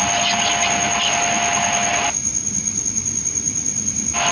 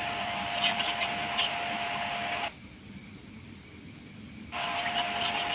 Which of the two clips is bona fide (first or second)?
first